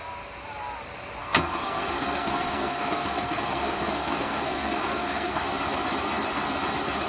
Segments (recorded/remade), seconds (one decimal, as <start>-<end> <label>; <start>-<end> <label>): 0.0-1.2 recorded; 1.2-5.4 remade; 5.4-7.1 recorded